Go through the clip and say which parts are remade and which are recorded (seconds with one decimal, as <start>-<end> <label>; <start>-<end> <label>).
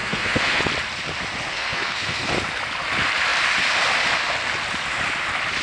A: 0.0-0.6 remade; 0.6-1.5 recorded; 1.5-2.3 remade; 2.3-5.6 recorded